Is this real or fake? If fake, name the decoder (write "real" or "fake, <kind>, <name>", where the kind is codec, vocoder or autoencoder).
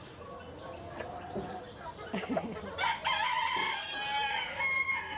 real